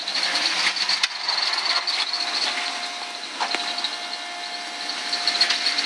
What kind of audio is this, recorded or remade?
recorded